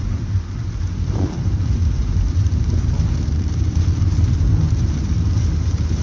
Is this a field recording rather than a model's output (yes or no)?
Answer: no